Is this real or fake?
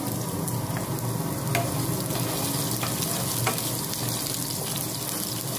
real